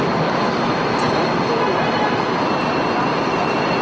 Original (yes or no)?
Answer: yes